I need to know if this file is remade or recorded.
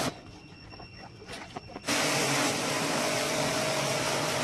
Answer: remade